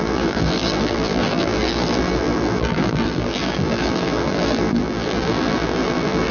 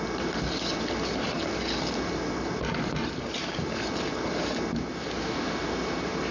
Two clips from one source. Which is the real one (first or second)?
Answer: second